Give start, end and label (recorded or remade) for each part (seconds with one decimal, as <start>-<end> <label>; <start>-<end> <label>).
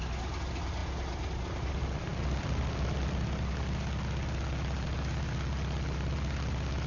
0.0-6.9 recorded